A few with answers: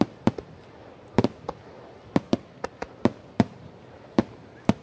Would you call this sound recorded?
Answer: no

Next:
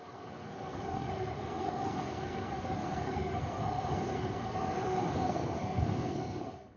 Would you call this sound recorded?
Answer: no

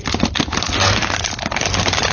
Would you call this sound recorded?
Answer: yes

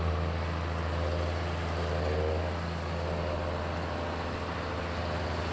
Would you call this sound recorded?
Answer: yes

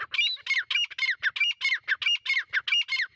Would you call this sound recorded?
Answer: yes